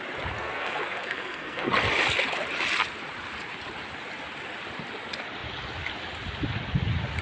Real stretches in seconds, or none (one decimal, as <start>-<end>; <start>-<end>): 0.0-0.4; 1.7-7.2